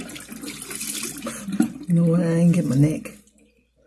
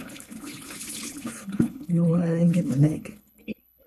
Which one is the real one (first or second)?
first